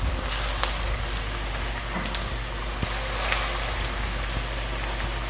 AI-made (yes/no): no